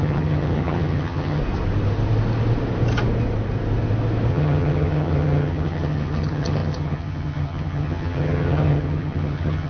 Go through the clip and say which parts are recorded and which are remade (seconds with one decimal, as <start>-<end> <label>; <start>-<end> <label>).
0.0-1.4 remade; 1.4-4.3 recorded; 4.3-9.7 remade